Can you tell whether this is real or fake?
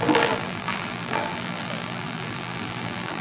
fake